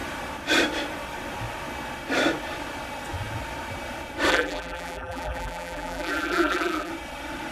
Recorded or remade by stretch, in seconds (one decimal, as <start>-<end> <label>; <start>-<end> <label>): 0.0-4.3 recorded; 4.3-6.9 remade; 6.9-7.5 recorded